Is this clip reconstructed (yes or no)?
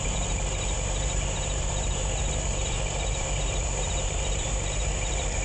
yes